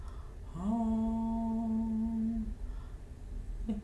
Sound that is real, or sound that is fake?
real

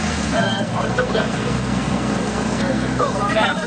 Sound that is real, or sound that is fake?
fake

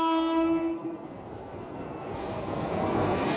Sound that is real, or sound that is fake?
fake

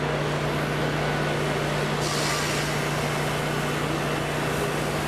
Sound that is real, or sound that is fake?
real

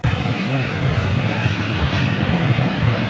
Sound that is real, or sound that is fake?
fake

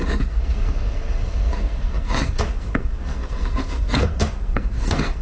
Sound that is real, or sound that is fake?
fake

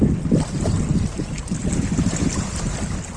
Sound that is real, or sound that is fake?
real